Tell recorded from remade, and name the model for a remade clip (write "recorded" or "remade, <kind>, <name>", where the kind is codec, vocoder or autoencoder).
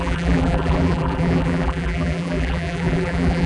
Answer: remade, vocoder, BigVGAN v2